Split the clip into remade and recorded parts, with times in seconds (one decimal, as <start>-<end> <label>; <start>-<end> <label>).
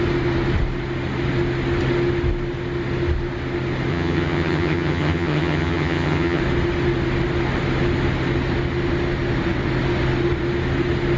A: 0.0-3.9 recorded; 3.9-6.4 remade; 6.4-11.2 recorded